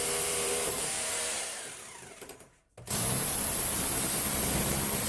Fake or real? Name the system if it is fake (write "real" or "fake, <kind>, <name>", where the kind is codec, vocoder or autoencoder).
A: fake, vocoder, BigVGAN v2